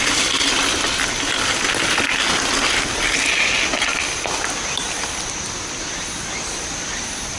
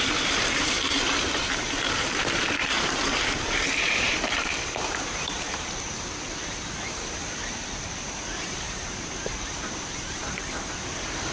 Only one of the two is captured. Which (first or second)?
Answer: first